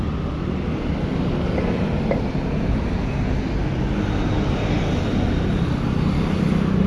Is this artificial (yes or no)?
no